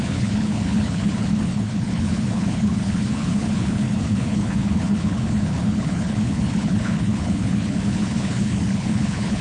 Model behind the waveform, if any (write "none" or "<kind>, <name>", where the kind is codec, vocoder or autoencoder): codec, HILCodec